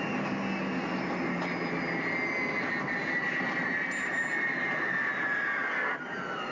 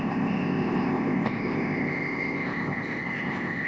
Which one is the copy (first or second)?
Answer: second